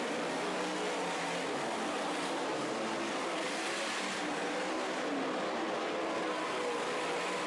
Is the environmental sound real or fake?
real